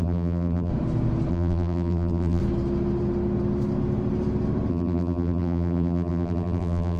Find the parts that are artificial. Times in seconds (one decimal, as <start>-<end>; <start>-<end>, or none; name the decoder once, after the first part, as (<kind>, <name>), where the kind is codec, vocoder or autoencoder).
0.0-0.7 (vocoder, BigVGAN v2); 1.3-2.4; 4.7-7.0